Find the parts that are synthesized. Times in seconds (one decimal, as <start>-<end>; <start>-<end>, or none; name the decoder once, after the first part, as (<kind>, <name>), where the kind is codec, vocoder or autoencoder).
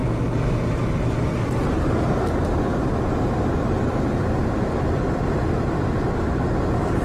4.2-7.0 (vocoder, BigVGAN v2)